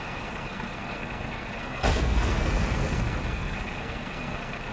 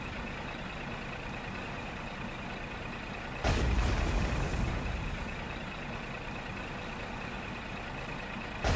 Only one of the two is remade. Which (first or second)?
first